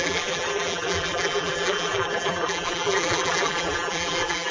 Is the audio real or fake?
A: fake